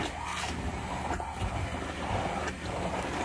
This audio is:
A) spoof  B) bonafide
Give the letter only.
B